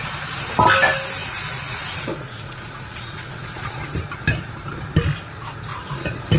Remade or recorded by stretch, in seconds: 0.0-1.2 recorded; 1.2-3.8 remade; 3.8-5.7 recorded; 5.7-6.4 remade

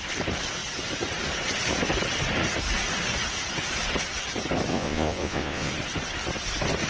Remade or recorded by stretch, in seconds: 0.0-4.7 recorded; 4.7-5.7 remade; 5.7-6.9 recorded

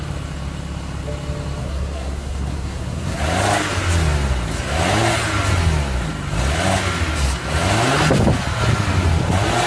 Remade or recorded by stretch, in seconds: 0.0-1.6 recorded; 1.6-3.2 remade; 3.2-9.7 recorded